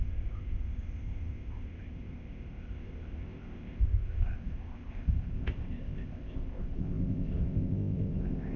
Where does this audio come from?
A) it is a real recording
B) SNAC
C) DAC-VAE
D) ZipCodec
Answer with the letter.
D